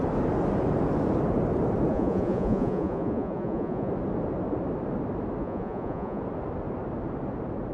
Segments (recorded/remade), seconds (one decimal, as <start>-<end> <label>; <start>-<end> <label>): 0.0-1.9 recorded; 1.9-3.9 remade; 3.9-5.4 recorded; 5.4-6.2 remade; 6.2-7.7 recorded

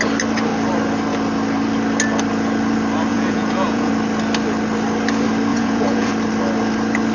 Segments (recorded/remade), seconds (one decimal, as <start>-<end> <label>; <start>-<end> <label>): 0.0-3.1 recorded; 3.1-3.9 remade; 3.9-5.5 recorded; 5.5-6.1 remade; 6.1-7.1 recorded

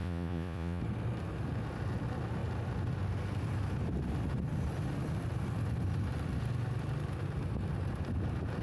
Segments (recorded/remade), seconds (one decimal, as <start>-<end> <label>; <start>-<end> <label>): 0.0-0.8 remade; 0.8-8.6 recorded

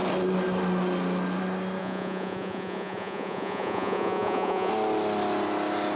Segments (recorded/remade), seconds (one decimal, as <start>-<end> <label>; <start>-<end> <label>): 0.0-1.8 recorded; 1.8-4.7 remade; 4.7-6.0 recorded